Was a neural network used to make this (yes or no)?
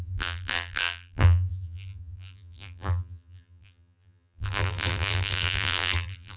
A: yes